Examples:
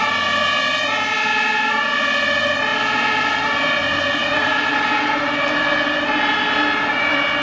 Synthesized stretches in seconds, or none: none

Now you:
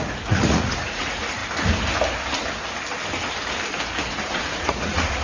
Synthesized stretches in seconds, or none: 0.0-1.4 (vocoder, Vocos); 4.0-5.2

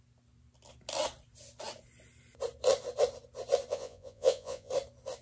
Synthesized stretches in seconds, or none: 3.7-4.7 (vocoder, Vocos)

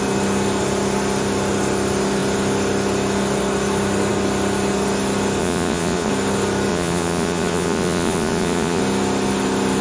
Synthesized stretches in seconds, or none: 5.4-6.1 (vocoder, Vocos); 6.7-8.8

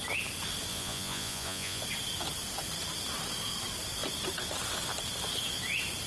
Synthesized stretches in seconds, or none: 0.7-1.8 (vocoder, Vocos)